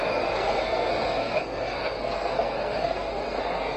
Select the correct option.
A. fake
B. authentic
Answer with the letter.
A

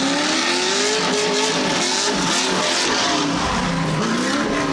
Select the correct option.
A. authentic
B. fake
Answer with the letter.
A